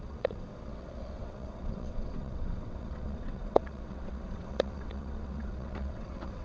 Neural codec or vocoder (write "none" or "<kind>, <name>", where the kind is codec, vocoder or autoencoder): vocoder, WaveNeXt